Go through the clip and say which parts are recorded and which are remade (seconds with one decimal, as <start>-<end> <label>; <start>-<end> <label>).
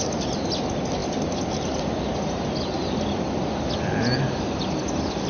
0.0-5.3 recorded